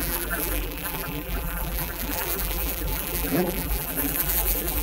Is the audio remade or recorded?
remade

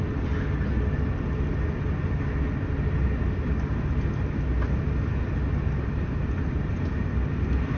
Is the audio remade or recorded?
recorded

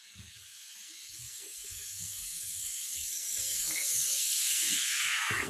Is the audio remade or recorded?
remade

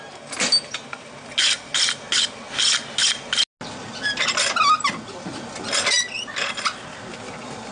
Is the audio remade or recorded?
recorded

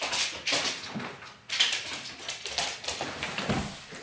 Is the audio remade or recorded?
recorded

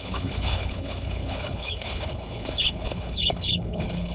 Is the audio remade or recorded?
remade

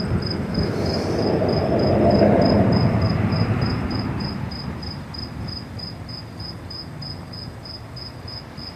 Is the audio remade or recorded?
remade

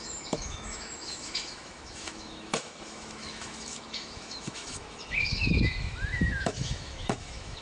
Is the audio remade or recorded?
remade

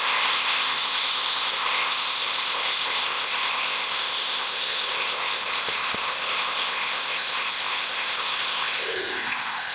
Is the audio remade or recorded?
remade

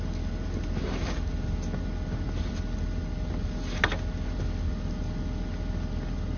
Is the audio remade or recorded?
recorded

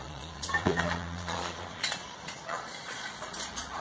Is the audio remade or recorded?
remade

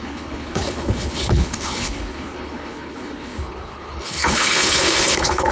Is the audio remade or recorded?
remade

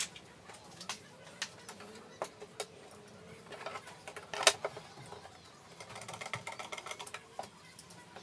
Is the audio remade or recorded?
recorded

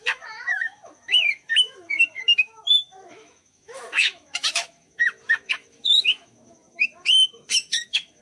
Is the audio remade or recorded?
remade